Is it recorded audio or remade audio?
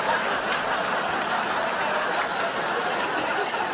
recorded